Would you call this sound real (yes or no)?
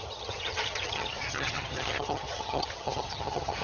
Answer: no